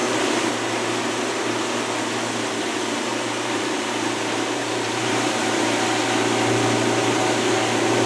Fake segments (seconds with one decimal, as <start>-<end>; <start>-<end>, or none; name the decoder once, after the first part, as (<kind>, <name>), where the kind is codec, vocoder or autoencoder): 0.0-0.5 (vocoder, BigVGAN v2); 3.1-5.6